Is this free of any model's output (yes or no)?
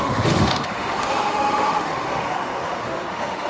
no